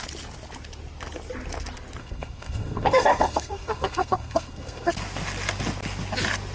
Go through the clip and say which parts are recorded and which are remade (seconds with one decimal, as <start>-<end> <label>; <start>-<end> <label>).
0.0-2.0 recorded; 2.0-4.9 remade; 4.9-6.5 recorded